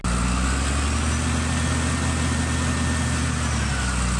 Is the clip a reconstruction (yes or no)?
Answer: no